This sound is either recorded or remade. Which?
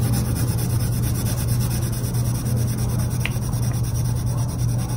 recorded